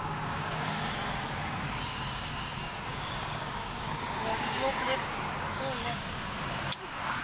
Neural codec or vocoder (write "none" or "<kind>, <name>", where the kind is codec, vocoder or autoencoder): codec, DAC